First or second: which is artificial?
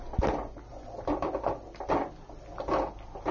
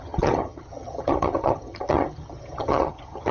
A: second